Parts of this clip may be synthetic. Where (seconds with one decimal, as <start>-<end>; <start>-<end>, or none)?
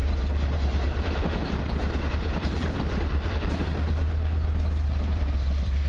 0.0-3.5; 5.1-5.9